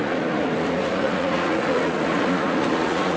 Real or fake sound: fake